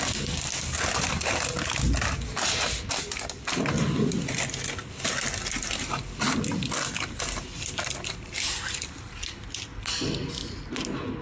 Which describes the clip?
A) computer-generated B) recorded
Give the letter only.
B